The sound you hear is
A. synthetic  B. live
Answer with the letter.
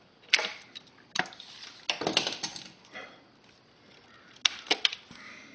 B